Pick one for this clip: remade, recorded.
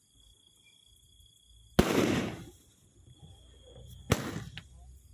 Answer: recorded